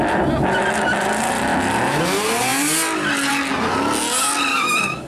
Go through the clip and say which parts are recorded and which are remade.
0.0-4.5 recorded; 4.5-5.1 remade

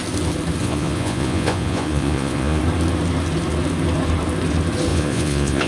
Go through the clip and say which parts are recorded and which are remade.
0.0-0.6 recorded; 0.6-2.6 remade; 2.6-4.9 recorded; 4.9-5.7 remade

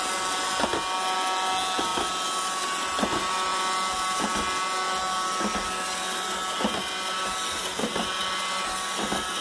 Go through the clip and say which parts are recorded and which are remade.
0.0-9.4 recorded

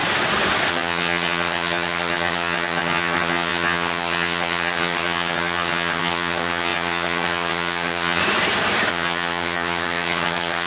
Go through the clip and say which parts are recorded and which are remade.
0.0-0.7 recorded; 0.7-8.2 remade; 8.2-8.9 recorded; 8.9-10.7 remade

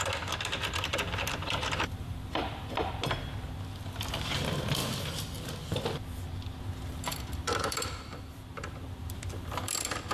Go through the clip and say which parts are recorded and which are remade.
0.0-7.1 recorded; 7.1-10.1 remade

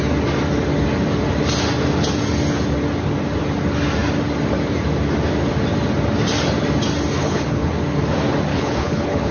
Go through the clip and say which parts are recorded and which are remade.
0.0-7.2 recorded; 7.2-7.7 remade; 7.7-8.5 recorded; 8.5-9.3 remade

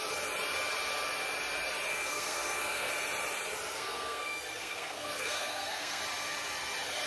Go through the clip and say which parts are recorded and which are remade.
0.0-1.9 recorded; 1.9-2.9 remade; 2.9-3.7 recorded; 3.7-6.0 remade; 6.0-7.1 recorded